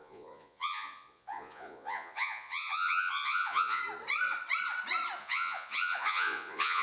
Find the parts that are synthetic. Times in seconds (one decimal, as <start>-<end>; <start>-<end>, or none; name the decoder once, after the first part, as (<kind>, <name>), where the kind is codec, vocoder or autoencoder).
0.0-3.8 (vocoder, Vocos); 5.2-6.8